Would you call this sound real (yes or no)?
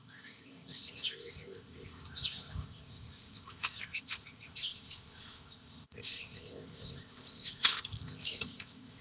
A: no